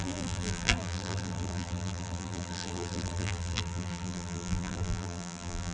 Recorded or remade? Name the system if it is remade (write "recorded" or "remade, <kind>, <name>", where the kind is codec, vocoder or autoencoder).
remade, vocoder, BigVGAN v2